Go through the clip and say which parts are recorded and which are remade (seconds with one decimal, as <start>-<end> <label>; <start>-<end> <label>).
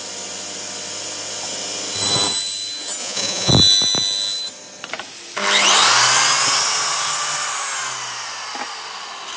0.0-3.0 recorded; 3.0-3.5 remade; 3.5-9.4 recorded